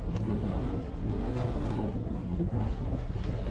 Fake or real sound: fake